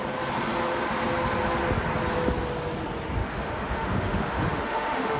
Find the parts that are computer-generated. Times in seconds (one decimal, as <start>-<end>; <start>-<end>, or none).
3.2-5.2